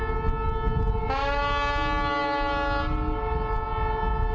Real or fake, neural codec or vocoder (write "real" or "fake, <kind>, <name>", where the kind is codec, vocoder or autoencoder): real